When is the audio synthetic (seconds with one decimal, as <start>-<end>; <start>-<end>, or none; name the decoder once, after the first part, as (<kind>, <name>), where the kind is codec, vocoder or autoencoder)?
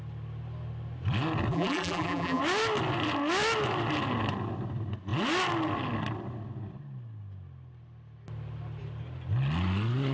1.5-2.4 (vocoder, BigVGAN v2)